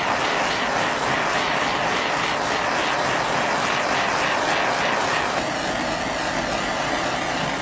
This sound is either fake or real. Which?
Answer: real